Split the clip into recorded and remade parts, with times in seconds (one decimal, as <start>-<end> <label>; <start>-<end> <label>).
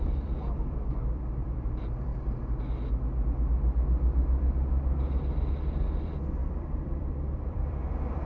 0.0-2.1 remade; 2.1-5.5 recorded; 5.5-8.2 remade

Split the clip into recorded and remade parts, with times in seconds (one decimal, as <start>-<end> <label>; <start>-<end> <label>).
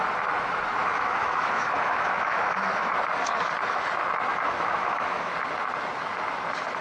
0.0-0.8 recorded; 0.8-2.9 remade; 2.9-4.3 recorded; 4.3-5.3 remade; 5.3-6.8 recorded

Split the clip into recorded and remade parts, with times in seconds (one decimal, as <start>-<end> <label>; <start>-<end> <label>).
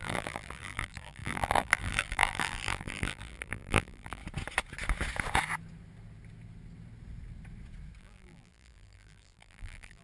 0.0-4.2 remade; 4.2-8.0 recorded; 8.0-10.0 remade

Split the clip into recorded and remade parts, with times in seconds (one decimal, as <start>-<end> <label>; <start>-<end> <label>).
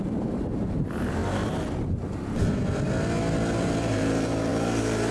0.0-1.2 remade; 1.2-3.6 recorded; 3.6-5.1 remade